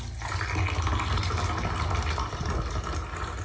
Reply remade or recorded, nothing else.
recorded